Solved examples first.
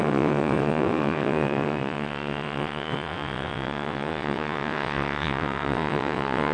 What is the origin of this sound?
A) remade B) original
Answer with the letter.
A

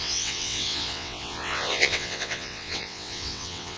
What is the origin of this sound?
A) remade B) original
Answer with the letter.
A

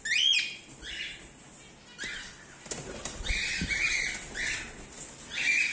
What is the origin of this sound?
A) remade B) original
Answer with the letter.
B